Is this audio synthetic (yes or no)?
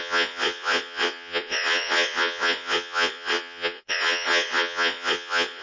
yes